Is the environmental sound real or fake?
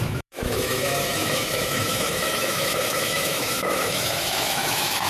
fake